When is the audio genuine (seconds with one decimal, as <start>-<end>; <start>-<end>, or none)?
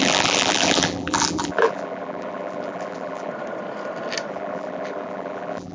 3.3-4.3